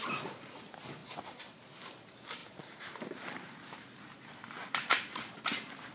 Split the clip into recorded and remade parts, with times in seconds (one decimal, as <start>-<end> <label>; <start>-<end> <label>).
0.0-2.4 recorded; 2.4-3.8 remade; 3.8-5.9 recorded